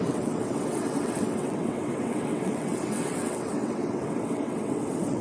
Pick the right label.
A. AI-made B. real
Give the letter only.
A